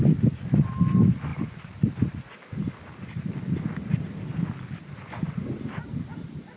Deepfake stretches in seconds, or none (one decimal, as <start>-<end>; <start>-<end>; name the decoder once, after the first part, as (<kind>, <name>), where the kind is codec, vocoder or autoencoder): none